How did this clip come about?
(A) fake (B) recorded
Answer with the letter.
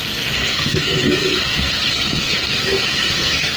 A